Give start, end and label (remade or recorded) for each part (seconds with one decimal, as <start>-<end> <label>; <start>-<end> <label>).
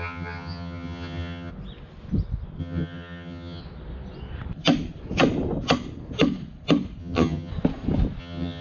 0.0-1.5 remade; 1.5-2.6 recorded; 2.6-3.6 remade; 3.6-7.0 recorded; 7.0-7.5 remade; 7.5-8.2 recorded; 8.2-8.6 remade